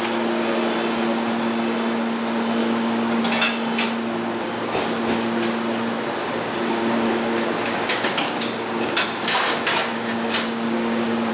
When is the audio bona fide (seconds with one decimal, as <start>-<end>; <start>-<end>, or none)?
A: 0.0-2.6; 3.2-6.2; 8.9-9.9

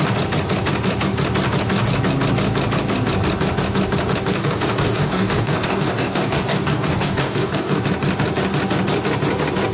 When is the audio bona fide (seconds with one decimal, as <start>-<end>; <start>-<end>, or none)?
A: 0.0-4.3; 7.8-9.7

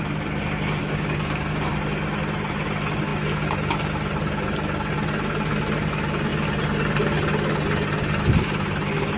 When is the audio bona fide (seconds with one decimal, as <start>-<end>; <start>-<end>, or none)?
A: 0.0-0.8; 1.7-9.2

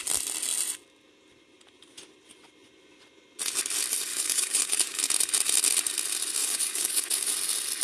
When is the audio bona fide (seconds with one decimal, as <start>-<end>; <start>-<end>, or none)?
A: 0.0-4.1; 5.0-6.4; 7.3-7.8

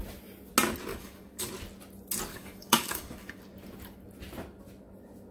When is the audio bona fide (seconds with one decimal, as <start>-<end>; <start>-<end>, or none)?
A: 0.0-0.9; 1.5-2.3; 3.4-5.3

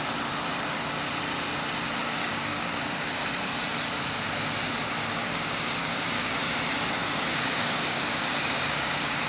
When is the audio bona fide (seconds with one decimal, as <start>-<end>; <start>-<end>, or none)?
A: 0.0-2.0; 3.1-5.1; 6.3-7.0

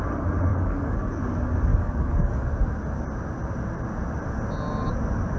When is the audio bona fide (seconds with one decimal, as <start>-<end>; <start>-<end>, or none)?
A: 0.0-0.5; 1.2-1.7; 2.5-5.4

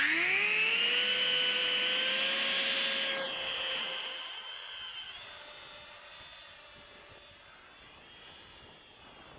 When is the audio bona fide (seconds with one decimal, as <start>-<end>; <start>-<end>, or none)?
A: 0.0-9.4